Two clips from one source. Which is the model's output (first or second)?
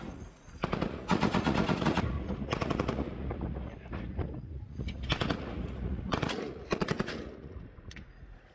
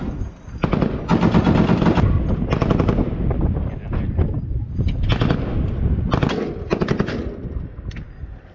first